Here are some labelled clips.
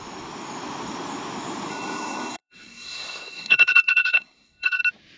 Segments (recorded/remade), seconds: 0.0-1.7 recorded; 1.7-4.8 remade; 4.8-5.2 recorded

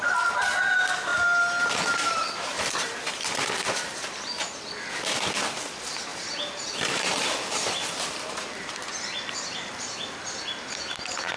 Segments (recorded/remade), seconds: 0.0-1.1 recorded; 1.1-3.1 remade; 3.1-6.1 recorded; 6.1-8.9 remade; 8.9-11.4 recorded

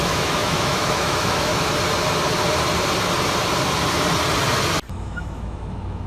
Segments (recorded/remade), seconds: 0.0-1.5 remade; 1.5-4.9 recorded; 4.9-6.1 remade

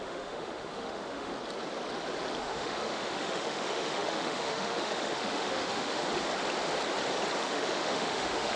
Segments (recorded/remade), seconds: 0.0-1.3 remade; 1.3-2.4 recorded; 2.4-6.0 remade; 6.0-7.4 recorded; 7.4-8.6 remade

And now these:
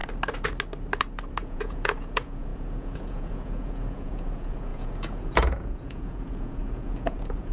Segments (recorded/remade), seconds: 0.0-1.4 recorded; 1.4-7.5 remade

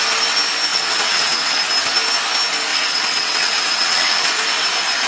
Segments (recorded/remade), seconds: 0.0-0.7 recorded; 0.7-1.6 remade; 1.6-2.7 recorded; 2.7-4.3 remade; 4.3-5.1 recorded